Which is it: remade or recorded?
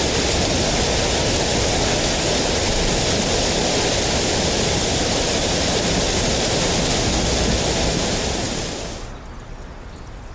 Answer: recorded